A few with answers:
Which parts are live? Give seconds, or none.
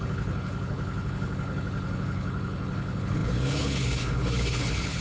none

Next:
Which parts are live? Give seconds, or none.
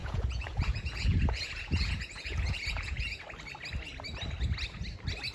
3.2-5.3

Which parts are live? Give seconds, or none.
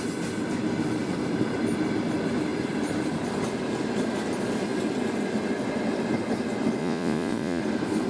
0.0-6.8; 7.6-8.1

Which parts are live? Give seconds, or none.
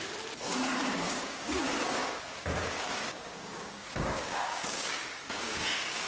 0.0-0.8; 1.6-2.0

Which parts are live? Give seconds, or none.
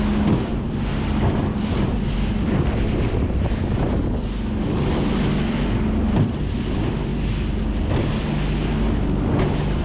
0.0-0.5; 3.9-9.8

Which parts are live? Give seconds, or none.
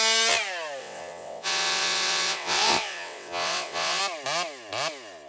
0.0-0.8; 4.0-5.3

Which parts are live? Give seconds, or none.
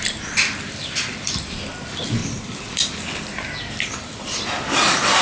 0.0-5.2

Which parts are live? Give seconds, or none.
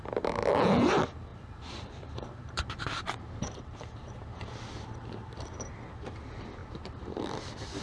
0.0-1.3; 5.9-6.6; 7.2-7.8